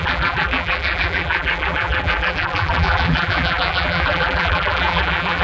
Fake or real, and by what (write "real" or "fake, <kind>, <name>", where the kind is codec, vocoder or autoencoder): fake, vocoder, BigVGAN v2